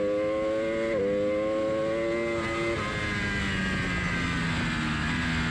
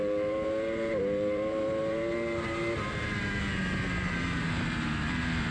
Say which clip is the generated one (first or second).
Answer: second